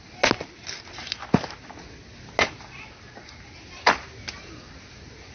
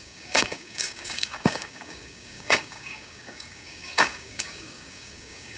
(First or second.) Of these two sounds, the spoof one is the second